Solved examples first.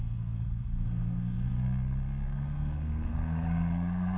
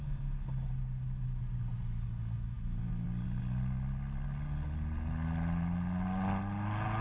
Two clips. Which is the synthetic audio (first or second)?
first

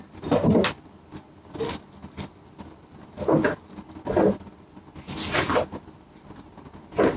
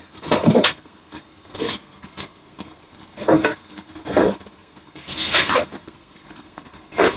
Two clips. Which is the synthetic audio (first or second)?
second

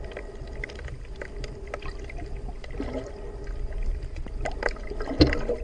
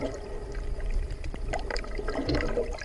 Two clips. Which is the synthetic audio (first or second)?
second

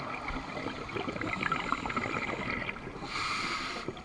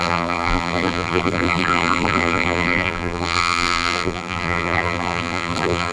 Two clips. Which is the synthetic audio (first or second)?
second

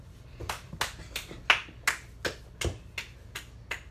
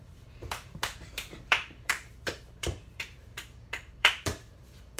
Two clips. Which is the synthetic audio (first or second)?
second